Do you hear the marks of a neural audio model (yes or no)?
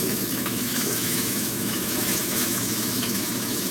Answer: yes